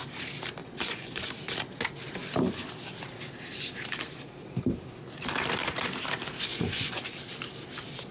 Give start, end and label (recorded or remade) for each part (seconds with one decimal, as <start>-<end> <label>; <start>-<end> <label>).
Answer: 0.0-0.6 recorded; 0.6-1.2 remade; 1.2-6.5 recorded; 6.5-7.0 remade; 7.0-8.1 recorded